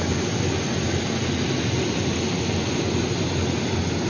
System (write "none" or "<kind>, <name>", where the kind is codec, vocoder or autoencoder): none